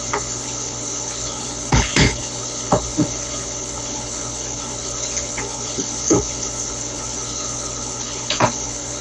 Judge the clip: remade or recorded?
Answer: remade